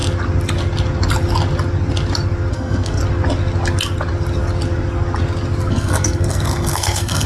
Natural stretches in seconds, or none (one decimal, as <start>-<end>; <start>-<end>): 0.0-2.5; 3.0-5.7